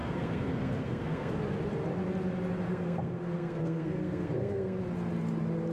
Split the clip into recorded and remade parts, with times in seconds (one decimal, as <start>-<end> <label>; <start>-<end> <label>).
0.0-1.3 remade; 1.3-2.7 recorded; 2.7-4.8 remade; 4.8-5.7 recorded